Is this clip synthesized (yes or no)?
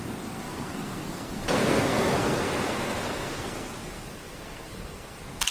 yes